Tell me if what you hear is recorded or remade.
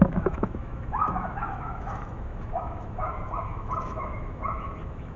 remade